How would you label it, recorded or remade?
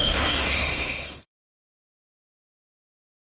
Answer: remade